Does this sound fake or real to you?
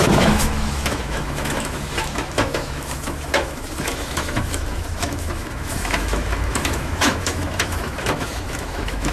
fake